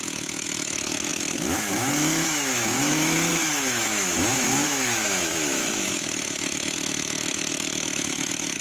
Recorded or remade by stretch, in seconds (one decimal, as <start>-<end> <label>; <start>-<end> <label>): 0.0-8.6 remade